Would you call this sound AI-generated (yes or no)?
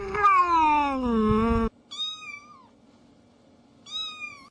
no